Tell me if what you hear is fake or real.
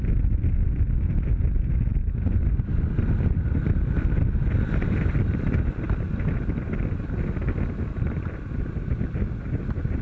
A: real